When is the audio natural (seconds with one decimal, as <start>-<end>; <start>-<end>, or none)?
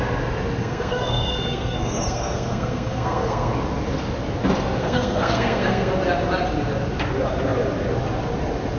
0.0-0.6; 3.5-4.8; 5.9-8.8